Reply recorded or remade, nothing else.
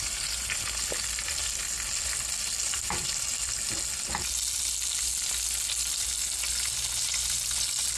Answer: recorded